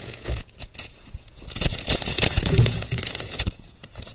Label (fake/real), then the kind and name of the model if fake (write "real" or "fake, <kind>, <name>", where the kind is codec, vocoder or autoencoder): fake, vocoder, Vocos